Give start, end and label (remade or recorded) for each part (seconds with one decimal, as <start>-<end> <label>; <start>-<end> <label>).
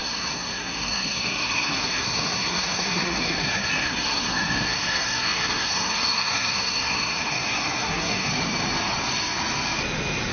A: 0.0-8.3 remade; 8.3-10.3 recorded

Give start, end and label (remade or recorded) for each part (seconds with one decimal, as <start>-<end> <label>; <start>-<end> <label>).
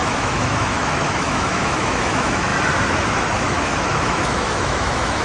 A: 0.0-2.5 remade; 2.5-3.1 recorded; 3.1-5.2 remade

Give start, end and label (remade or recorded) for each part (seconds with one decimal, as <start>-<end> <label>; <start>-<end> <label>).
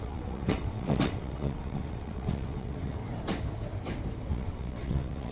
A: 0.0-3.0 remade; 3.0-4.3 recorded; 4.3-5.3 remade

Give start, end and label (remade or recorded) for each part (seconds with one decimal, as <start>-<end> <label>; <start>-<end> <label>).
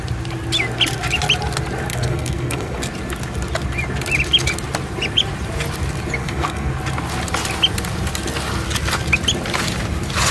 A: 0.0-1.9 recorded; 1.9-2.8 remade; 2.8-6.2 recorded; 6.2-6.7 remade; 6.7-10.3 recorded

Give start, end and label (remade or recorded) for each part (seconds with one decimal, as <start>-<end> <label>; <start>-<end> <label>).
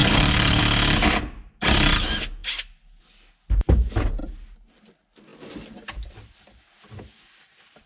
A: 0.0-0.6 remade; 0.6-7.9 recorded